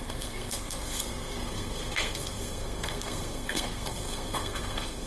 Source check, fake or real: fake